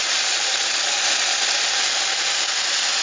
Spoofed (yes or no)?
no